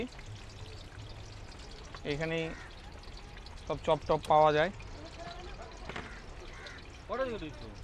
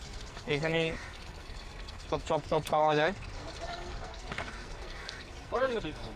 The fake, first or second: second